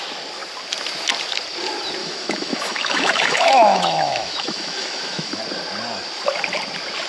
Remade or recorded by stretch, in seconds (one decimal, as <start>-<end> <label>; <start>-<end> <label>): 0.0-2.0 recorded; 2.0-5.4 remade; 5.4-7.1 recorded